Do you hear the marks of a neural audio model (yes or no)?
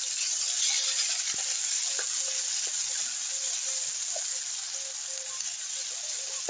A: no